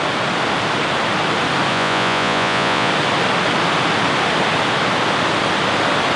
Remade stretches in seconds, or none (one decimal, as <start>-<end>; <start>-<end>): 1.7-2.9